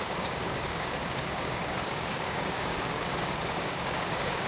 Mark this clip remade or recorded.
remade